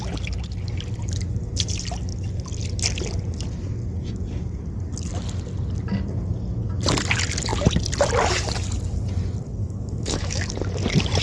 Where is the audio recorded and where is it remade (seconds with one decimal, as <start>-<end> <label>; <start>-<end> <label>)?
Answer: 0.0-9.6 recorded; 9.6-10.5 remade; 10.5-11.2 recorded